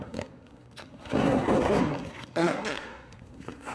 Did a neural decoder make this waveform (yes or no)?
yes